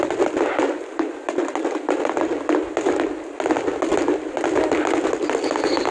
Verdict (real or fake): real